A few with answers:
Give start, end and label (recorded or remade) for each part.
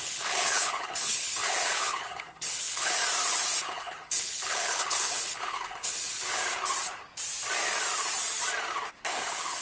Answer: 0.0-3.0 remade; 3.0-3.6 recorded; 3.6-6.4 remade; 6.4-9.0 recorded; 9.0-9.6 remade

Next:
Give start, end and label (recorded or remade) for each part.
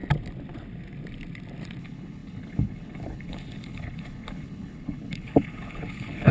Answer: 0.0-1.8 recorded; 1.8-6.3 remade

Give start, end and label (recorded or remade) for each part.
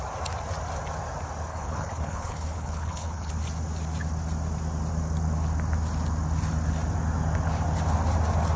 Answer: 0.0-1.5 recorded; 1.5-3.3 remade; 3.3-8.6 recorded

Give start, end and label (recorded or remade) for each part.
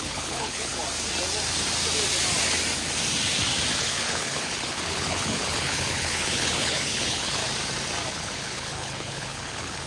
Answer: 0.0-0.7 remade; 0.7-3.8 recorded; 3.8-7.4 remade; 7.4-8.1 recorded; 8.1-9.9 remade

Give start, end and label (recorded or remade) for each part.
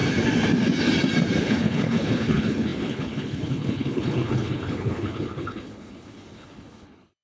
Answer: 0.0-1.4 recorded; 1.4-7.2 remade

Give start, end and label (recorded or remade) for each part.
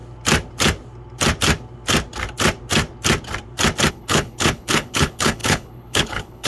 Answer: 0.0-3.9 recorded; 3.9-6.5 remade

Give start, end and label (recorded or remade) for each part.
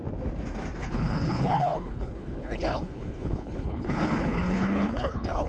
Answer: 0.0-0.8 recorded; 0.8-5.5 remade